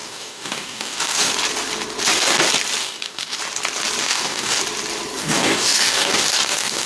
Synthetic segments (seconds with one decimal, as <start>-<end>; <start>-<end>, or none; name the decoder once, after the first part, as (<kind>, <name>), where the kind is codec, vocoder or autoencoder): 0.0-1.3 (codec, DAC); 2.8-3.4; 4.0-4.6; 5.2-6.9